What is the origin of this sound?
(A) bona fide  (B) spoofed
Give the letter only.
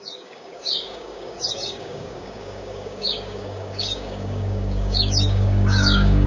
B